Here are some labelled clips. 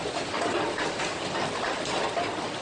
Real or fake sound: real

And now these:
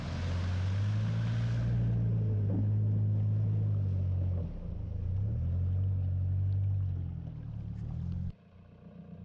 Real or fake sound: real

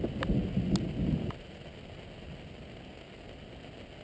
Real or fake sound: real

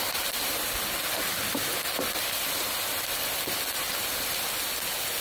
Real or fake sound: real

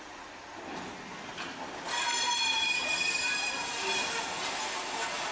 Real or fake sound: real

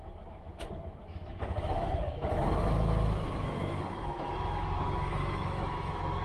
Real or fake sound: fake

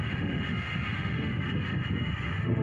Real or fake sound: fake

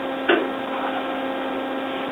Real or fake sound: real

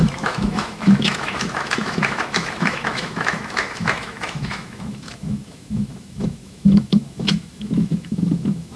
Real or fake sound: fake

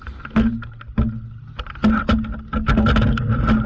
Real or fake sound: real